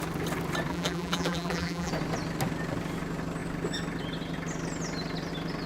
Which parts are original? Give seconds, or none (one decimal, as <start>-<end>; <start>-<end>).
0.0-0.7; 1.9-5.7